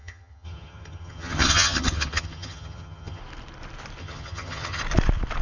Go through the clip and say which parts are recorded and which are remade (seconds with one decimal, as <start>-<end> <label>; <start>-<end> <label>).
0.0-3.2 remade; 3.2-4.0 recorded; 4.0-4.8 remade; 4.8-5.4 recorded